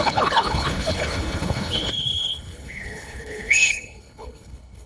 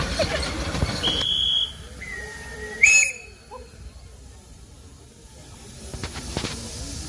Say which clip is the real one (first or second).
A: second